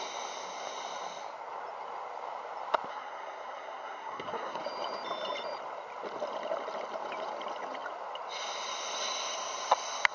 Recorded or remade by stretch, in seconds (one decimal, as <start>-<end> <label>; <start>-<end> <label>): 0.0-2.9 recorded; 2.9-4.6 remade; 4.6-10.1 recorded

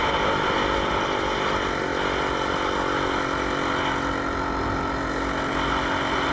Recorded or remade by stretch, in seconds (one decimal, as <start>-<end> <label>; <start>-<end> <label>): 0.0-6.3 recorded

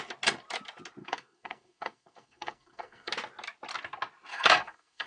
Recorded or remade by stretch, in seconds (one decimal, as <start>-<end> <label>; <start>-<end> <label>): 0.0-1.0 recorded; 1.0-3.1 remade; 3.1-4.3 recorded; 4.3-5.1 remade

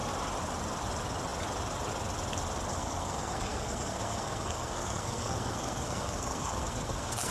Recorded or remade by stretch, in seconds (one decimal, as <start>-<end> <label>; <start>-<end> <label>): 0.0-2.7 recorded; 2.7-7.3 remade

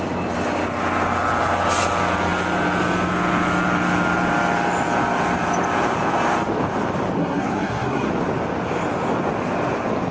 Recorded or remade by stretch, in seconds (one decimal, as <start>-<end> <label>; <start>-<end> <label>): 0.0-7.2 recorded; 7.2-8.1 remade; 8.1-10.1 recorded